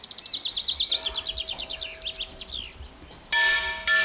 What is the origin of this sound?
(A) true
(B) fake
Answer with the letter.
A